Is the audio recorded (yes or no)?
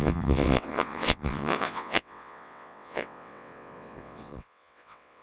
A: no